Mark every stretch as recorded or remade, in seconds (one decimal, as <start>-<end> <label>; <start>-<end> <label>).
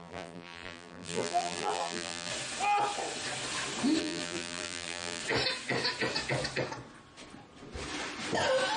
0.0-2.3 remade; 2.3-4.0 recorded; 4.0-5.2 remade; 5.2-8.8 recorded